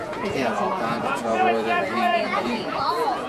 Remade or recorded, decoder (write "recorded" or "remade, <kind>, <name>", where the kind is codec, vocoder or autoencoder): remade, vocoder, Vocos